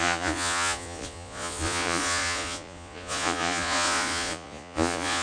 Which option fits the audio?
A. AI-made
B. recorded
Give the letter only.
A